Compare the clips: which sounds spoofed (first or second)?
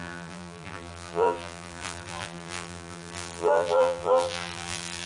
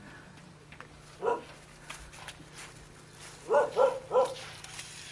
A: first